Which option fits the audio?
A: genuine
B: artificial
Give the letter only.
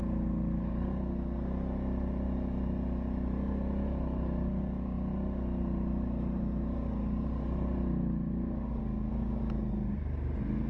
A